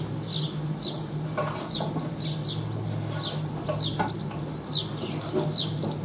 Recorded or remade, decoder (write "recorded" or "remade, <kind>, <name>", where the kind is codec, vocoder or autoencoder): recorded